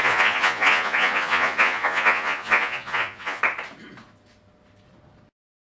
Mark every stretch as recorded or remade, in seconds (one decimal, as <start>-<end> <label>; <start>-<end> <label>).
0.0-3.4 remade; 3.4-5.6 recorded